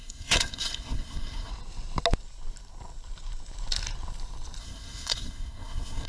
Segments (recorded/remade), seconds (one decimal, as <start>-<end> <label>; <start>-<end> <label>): 0.0-1.5 remade; 1.5-4.6 recorded; 4.6-6.1 remade